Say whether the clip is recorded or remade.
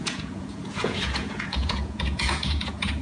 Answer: remade